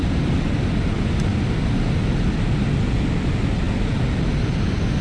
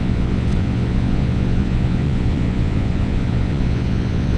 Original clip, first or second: first